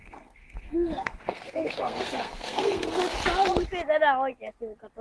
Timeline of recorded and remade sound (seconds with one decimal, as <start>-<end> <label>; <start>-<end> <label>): 0.0-3.0 remade; 3.0-5.0 recorded